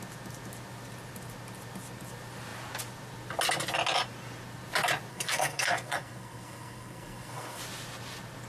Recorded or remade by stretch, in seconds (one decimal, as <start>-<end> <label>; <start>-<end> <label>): 0.0-5.1 recorded; 5.1-7.6 remade; 7.6-8.5 recorded